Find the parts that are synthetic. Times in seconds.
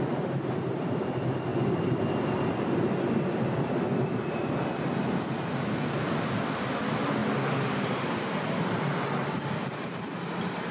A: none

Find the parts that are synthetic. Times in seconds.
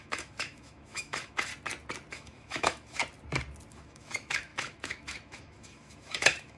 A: 0.0-1.5 (autoencoder, DAC-VAE); 2.1-3.0; 3.7-6.6